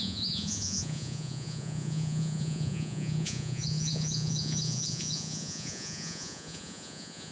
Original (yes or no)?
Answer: no